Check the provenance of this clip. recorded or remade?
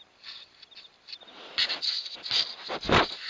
recorded